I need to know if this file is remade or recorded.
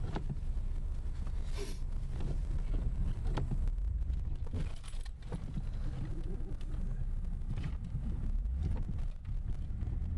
recorded